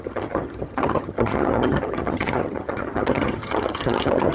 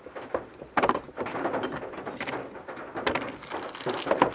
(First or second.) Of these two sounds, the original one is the second